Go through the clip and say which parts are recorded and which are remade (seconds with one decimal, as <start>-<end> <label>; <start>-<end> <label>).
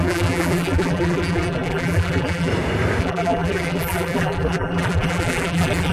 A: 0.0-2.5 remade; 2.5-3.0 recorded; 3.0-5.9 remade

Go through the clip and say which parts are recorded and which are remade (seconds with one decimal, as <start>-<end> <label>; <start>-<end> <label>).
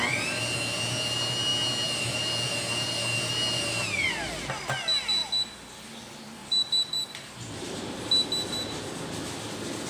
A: 0.0-6.4 recorded; 6.4-7.8 remade; 7.8-9.9 recorded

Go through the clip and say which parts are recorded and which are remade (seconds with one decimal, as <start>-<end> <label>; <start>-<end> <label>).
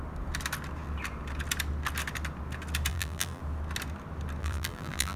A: 0.0-2.9 recorded; 2.9-3.4 remade; 3.4-4.4 recorded; 4.4-5.2 remade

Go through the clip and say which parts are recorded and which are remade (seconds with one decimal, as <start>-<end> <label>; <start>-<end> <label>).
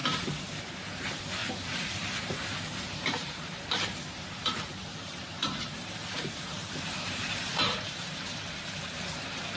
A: 0.0-1.4 recorded; 1.4-3.5 remade; 3.5-4.4 recorded; 4.4-9.6 remade